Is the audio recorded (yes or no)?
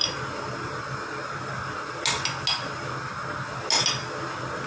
yes